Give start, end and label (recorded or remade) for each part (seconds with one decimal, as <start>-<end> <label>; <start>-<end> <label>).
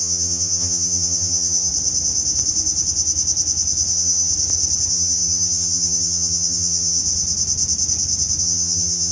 0.0-1.7 remade; 1.7-3.9 recorded; 3.9-4.3 remade; 4.3-4.9 recorded; 4.9-7.0 remade; 7.0-8.4 recorded; 8.4-9.1 remade